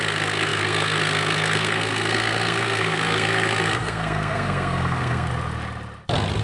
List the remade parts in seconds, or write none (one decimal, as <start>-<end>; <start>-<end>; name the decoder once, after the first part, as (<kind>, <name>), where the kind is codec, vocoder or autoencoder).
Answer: 0.0-5.3 (codec, SNAC)